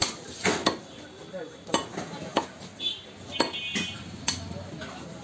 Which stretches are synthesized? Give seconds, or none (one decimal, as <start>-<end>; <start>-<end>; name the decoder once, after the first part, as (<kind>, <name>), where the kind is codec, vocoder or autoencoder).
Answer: none